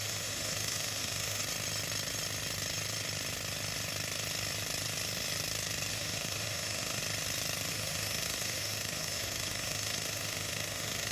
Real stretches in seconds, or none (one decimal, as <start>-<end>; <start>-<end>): 1.4-5.9; 7.0-7.7